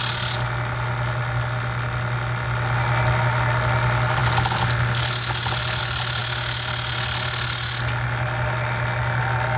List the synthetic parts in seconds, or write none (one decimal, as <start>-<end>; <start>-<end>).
none